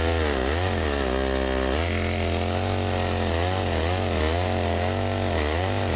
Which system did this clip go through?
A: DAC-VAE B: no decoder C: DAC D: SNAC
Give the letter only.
B